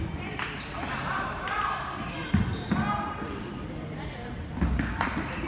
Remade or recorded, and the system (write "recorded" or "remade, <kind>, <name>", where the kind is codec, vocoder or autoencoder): recorded